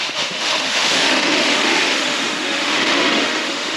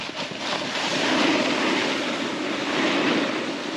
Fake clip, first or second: first